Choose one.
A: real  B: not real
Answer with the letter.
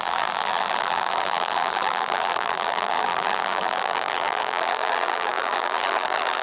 B